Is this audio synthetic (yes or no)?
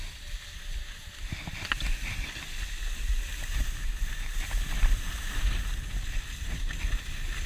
no